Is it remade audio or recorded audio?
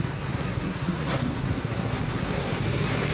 remade